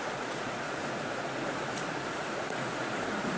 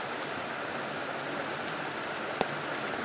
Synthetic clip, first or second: first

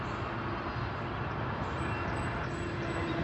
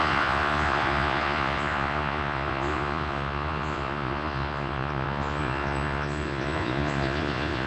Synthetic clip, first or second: second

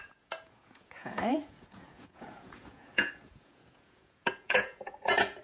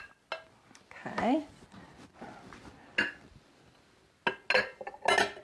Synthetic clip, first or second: first